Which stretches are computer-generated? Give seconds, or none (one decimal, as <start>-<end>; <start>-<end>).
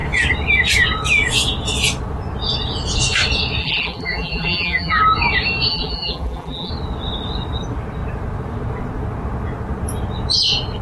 3.6-5.0; 5.7-6.7